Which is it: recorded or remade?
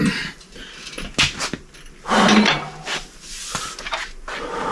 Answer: recorded